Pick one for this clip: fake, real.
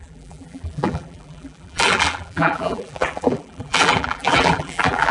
fake